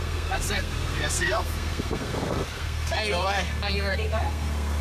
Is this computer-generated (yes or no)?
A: yes